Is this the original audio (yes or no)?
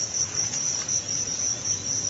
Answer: no